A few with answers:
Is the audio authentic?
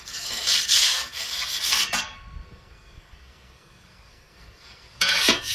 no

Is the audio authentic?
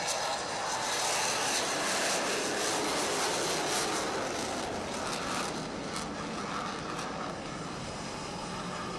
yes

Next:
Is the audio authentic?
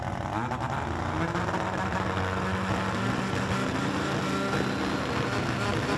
yes